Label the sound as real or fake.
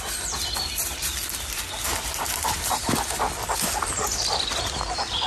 real